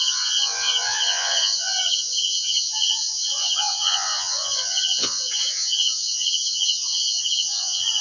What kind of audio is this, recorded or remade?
remade